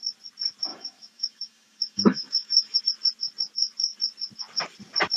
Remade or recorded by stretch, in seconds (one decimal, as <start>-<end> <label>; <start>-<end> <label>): 0.0-0.7 recorded; 0.7-2.8 remade; 2.8-5.2 recorded